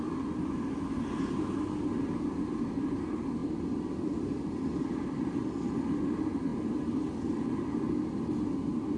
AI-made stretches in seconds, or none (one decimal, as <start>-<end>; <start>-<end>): 3.4-5.5; 6.5-8.0